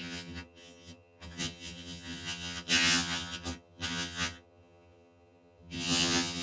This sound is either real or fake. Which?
fake